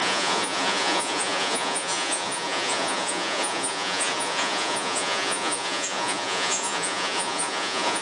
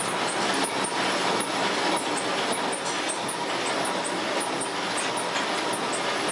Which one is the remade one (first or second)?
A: first